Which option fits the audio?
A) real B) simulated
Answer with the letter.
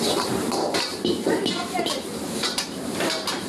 B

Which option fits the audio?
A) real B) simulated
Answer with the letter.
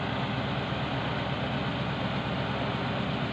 A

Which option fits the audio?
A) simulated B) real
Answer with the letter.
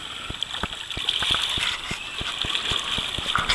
B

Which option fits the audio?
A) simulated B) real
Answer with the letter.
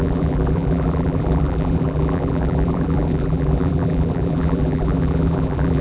A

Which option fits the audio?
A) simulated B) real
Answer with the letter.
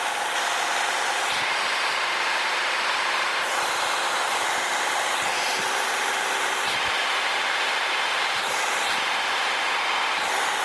A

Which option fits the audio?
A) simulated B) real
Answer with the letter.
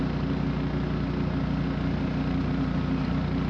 B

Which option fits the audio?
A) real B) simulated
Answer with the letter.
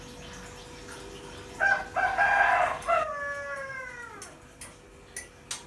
A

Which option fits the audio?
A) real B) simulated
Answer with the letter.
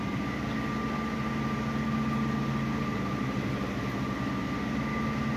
A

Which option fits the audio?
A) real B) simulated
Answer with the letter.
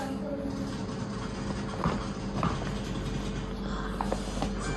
A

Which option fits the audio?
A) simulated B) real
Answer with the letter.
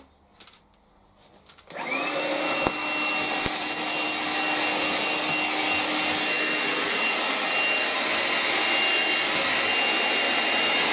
B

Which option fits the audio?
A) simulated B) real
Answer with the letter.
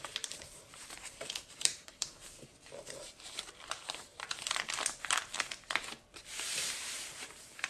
A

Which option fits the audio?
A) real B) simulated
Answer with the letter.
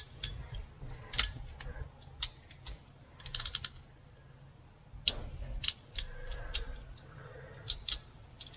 A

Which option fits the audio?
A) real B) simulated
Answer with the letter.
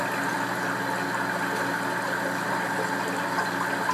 A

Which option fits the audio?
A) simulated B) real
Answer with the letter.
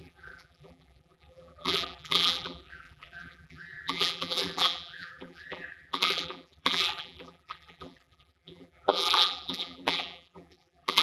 A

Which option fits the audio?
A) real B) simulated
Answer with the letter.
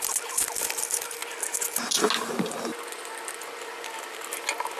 A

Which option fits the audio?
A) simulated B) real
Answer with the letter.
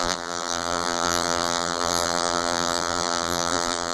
A